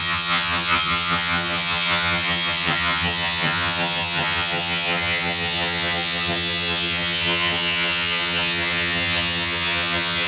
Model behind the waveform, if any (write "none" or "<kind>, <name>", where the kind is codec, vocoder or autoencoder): vocoder, HiFi-GAN